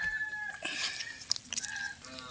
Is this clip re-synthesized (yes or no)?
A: no